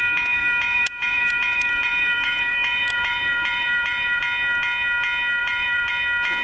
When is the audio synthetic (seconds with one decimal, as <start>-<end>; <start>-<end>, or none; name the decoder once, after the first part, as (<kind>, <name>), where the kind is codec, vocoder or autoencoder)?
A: 0.4-4.2 (vocoder, BigVGAN v2); 5.4-5.9